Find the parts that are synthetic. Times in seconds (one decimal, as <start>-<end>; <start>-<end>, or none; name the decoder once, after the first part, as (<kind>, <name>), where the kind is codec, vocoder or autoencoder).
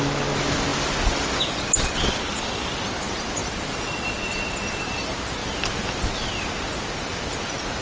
3.4-4.9 (vocoder, BigVGAN v2)